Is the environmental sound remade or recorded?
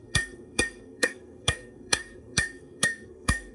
remade